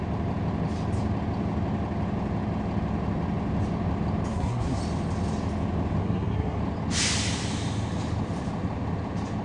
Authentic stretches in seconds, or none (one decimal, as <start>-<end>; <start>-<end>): 0.0-4.3; 4.8-6.0; 6.6-9.4